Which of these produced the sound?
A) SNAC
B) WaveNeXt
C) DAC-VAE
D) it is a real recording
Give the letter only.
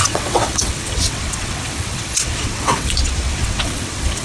B